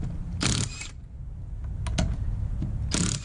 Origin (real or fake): real